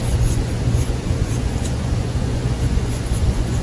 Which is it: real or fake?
fake